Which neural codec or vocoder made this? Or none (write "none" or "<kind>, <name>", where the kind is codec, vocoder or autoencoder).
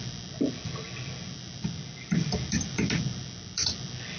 none